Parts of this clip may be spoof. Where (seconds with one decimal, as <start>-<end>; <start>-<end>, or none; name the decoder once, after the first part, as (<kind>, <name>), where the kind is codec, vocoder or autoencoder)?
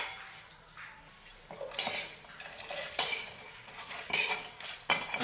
2.8-4.3 (vocoder, Vocos)